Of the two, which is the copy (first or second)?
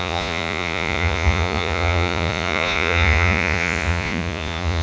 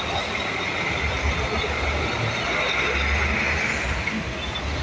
first